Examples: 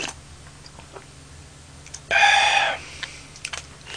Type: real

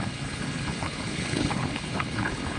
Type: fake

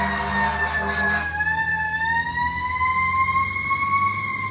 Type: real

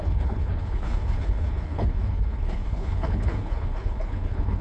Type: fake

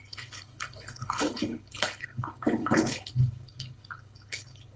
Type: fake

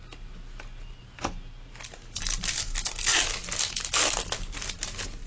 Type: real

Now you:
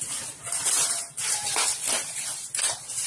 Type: real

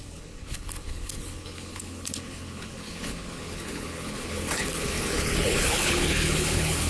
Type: fake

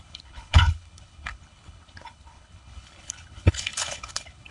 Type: fake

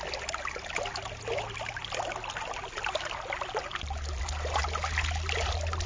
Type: real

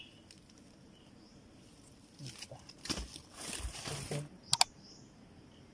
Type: real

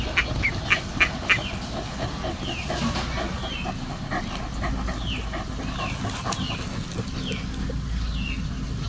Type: real